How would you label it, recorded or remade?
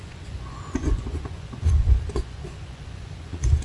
remade